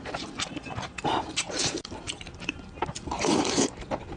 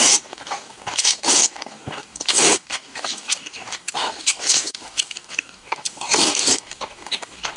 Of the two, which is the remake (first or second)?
second